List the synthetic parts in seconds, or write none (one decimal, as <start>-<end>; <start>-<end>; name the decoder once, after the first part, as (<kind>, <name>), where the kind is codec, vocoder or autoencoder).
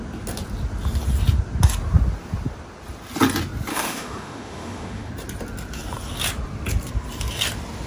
3.7-5.1 (autoencoder, DAC-VAE)